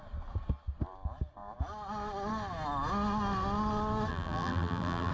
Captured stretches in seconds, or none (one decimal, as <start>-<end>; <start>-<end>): 0.0-4.1